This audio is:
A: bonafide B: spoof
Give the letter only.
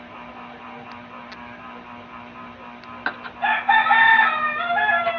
A